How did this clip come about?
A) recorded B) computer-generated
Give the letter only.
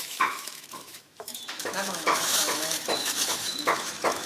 B